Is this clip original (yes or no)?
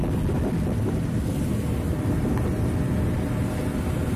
yes